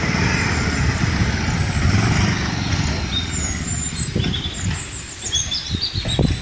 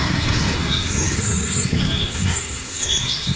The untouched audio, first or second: first